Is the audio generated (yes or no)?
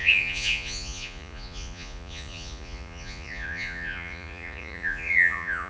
yes